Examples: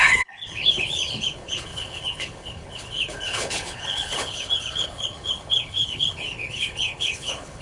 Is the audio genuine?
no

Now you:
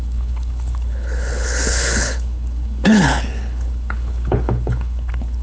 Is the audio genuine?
no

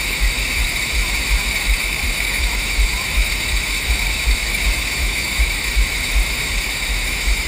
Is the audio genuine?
no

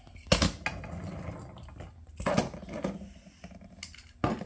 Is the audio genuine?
yes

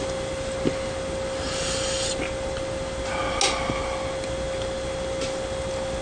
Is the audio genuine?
yes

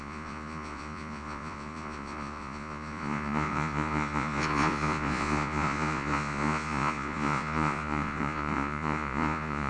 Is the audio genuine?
no